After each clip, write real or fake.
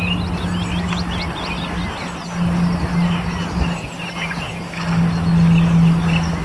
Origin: real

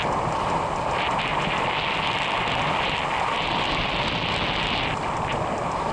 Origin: real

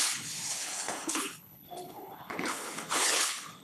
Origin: fake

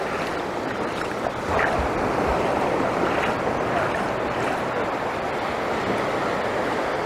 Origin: real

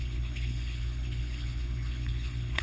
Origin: fake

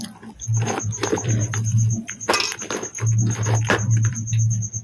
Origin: real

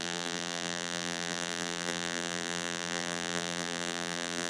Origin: fake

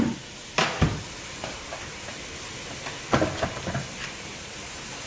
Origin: real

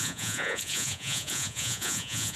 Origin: fake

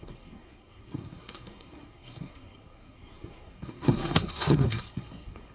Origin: fake